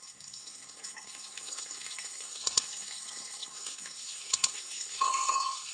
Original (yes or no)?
no